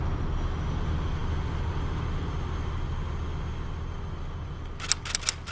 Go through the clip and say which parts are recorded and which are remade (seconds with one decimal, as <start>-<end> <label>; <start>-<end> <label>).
0.0-5.5 recorded